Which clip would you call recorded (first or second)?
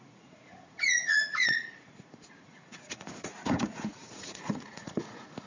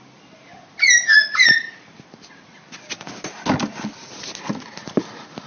second